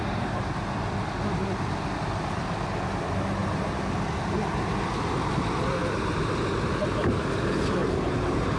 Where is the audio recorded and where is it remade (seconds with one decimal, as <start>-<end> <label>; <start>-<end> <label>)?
0.0-5.8 recorded; 5.8-6.4 remade; 6.4-7.8 recorded; 7.8-8.6 remade